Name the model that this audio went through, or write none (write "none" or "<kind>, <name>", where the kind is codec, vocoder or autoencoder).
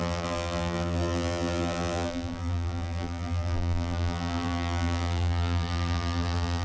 vocoder, BigVGAN v2